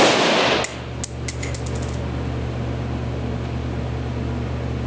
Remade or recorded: recorded